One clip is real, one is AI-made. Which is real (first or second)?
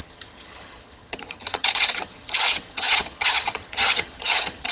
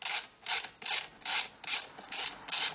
second